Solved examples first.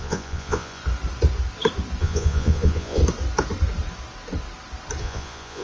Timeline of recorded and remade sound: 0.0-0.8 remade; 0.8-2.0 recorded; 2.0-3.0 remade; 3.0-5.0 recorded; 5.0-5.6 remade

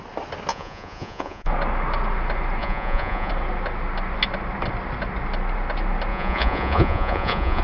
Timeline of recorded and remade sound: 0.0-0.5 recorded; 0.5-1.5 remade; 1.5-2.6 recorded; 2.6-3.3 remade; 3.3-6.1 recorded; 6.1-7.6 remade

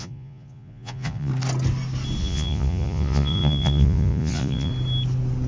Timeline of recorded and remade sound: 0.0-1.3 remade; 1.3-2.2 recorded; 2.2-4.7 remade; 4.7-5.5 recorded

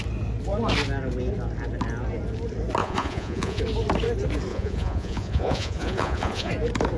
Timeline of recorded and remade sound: 0.0-2.8 recorded; 2.8-3.6 remade; 3.6-4.5 recorded; 4.5-6.5 remade; 6.5-7.0 recorded

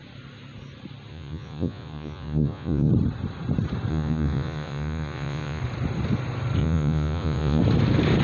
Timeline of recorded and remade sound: 0.0-1.1 recorded; 1.1-2.9 remade; 2.9-3.9 recorded; 3.9-5.6 remade; 5.6-6.6 recorded; 6.6-7.6 remade; 7.6-8.2 recorded

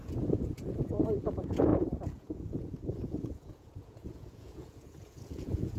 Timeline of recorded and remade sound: 0.0-5.8 remade

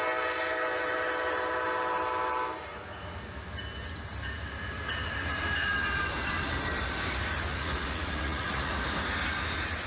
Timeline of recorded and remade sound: 0.0-7.5 recorded; 7.5-8.7 remade; 8.7-9.9 recorded

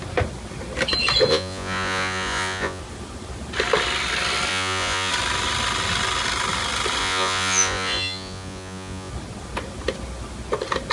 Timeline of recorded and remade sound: 0.0-1.3 recorded; 1.3-2.8 remade; 2.8-4.5 recorded; 4.5-5.1 remade; 5.1-7.0 recorded; 7.0-9.1 remade; 9.1-10.9 recorded